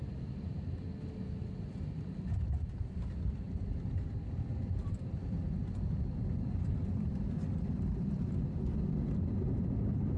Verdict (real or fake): real